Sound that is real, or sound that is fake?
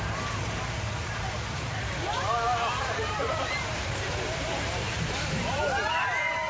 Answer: fake